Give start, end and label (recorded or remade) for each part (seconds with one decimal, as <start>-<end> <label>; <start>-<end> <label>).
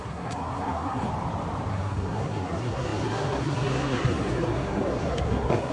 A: 0.0-1.1 remade; 1.1-1.7 recorded; 1.7-5.7 remade